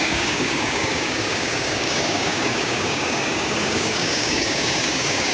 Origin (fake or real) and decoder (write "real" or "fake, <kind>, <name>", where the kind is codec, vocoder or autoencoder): fake, codec, DAC